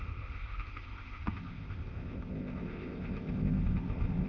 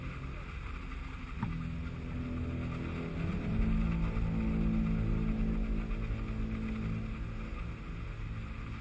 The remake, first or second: first